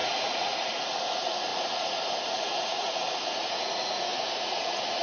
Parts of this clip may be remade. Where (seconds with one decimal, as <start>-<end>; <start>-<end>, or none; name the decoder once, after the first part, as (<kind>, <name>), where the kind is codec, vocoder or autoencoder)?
0.0-5.0 (vocoder, Vocos)